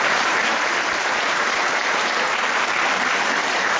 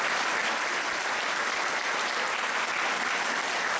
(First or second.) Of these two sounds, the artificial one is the first